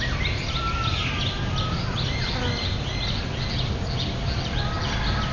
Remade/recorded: recorded